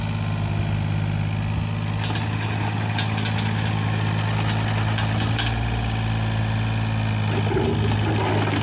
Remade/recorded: recorded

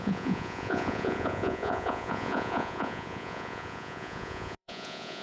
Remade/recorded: remade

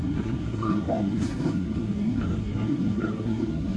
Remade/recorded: remade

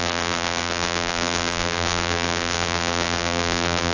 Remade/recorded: remade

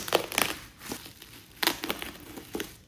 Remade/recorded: recorded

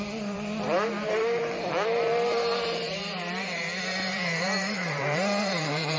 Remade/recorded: remade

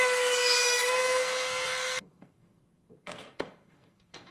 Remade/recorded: remade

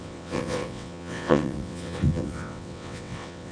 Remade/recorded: remade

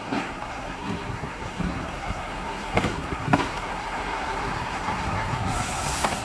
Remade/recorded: remade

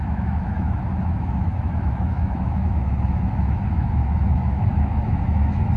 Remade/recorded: remade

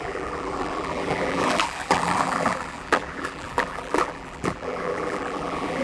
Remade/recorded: remade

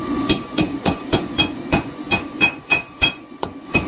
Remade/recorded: remade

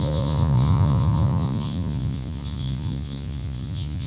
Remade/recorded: remade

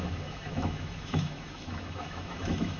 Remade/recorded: remade